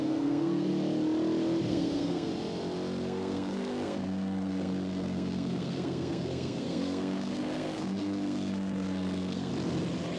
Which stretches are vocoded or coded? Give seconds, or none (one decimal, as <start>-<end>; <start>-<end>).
0.0-0.7; 1.7-2.3; 3.0-9.5

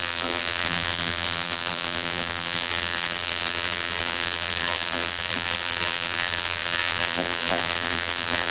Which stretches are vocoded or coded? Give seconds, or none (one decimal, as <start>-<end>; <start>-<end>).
0.0-8.5

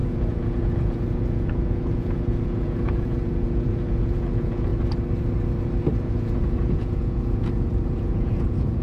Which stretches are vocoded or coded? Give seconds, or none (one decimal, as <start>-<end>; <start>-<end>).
0.0-4.7; 6.0-8.8

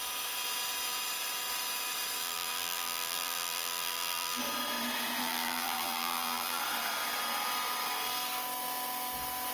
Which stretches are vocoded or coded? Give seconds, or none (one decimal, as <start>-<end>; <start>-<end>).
2.2-4.4; 5.2-6.6

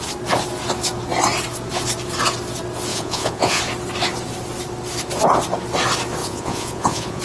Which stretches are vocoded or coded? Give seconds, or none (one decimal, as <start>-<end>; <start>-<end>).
2.9-3.6; 6.2-7.2